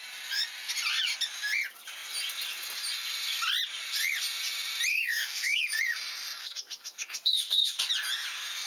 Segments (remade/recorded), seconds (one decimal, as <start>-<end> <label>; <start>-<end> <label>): 0.0-4.9 recorded; 4.9-5.6 remade; 5.6-6.4 recorded; 6.4-7.9 remade; 7.9-8.7 recorded